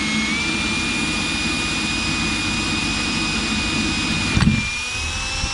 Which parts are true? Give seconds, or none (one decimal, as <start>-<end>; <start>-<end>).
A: 0.0-2.8; 3.4-5.5